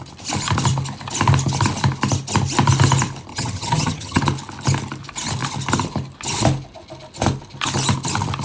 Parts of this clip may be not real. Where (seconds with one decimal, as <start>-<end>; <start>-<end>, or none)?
3.3-4.2